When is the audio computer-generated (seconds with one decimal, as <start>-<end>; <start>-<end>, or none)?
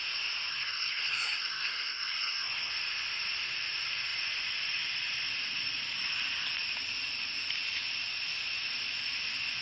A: 0.5-2.7